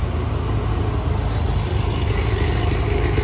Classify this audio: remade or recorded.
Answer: recorded